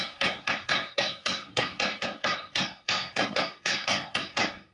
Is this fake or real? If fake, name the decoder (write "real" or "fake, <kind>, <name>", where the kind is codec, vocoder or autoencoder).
fake, codec, SNAC